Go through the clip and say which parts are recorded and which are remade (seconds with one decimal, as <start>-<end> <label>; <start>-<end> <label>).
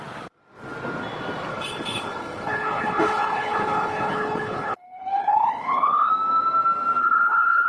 0.0-1.5 recorded; 1.5-6.1 remade; 6.1-7.0 recorded; 7.0-7.7 remade